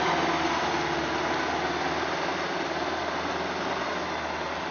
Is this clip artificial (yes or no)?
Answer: no